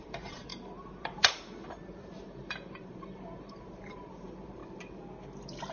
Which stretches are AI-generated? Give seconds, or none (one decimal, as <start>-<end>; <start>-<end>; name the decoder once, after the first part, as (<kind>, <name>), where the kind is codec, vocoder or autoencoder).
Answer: 0.0-4.6 (vocoder, BigVGAN v2)